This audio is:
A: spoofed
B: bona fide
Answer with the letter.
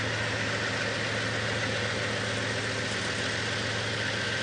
B